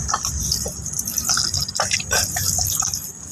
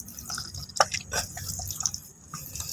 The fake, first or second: first